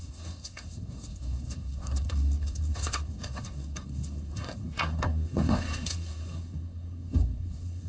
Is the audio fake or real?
fake